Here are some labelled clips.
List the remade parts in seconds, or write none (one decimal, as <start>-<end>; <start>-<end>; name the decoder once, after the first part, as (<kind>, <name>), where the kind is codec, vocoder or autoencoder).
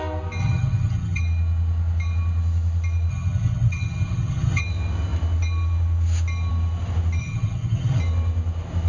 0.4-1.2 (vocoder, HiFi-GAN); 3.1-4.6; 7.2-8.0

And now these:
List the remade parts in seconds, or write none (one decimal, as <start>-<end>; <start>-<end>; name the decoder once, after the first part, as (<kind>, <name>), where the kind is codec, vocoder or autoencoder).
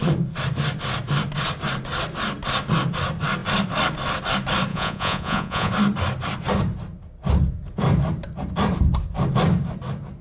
4.7-5.7 (vocoder, Vocos)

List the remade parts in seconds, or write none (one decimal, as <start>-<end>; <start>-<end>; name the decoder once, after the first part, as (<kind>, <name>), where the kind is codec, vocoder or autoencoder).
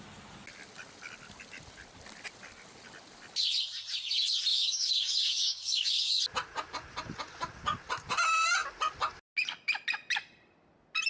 4.5-6.2 (codec, DAC)